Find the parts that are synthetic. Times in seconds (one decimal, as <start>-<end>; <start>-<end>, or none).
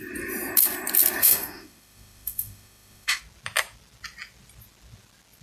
1.2-3.2